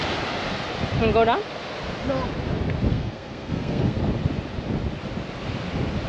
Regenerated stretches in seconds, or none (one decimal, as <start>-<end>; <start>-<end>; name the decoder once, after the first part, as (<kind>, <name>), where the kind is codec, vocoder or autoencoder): 2.9-4.0 (codec, SNAC)